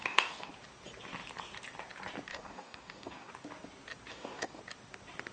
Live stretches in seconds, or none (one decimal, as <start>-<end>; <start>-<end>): 0.5-2.3; 3.3-4.1; 4.6-5.3